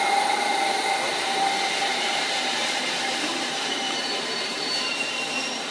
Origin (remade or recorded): remade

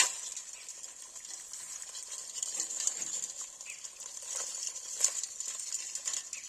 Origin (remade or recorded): recorded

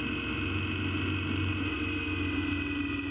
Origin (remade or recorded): recorded